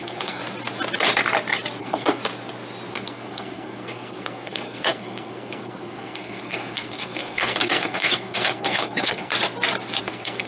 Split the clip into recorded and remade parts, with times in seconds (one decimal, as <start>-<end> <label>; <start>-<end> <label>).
0.0-0.4 remade; 0.4-1.8 recorded; 1.8-2.2 remade; 2.2-2.9 recorded; 2.9-9.3 remade; 9.3-10.0 recorded; 10.0-10.5 remade

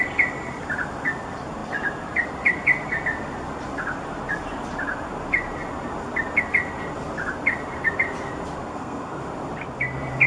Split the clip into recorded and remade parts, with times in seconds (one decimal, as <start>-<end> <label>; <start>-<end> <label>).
0.0-8.7 recorded; 8.7-9.2 remade; 9.2-10.3 recorded

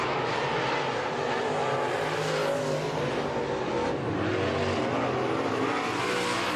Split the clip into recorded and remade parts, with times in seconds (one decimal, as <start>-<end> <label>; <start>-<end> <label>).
0.0-6.6 recorded